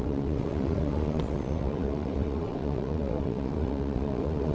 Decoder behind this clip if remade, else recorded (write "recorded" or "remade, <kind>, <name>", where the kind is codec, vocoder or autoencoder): remade, vocoder, WaveNeXt